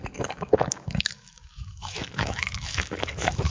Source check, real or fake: fake